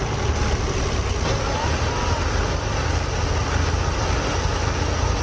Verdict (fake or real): real